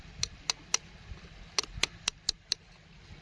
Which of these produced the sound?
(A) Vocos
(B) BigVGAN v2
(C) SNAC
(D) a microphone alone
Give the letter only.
D